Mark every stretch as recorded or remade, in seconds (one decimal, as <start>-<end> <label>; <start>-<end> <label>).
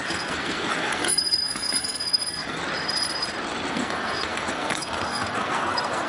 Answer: 0.0-2.6 remade; 2.6-3.7 recorded; 3.7-6.1 remade